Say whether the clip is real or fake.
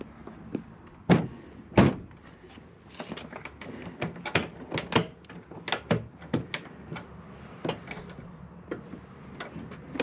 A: real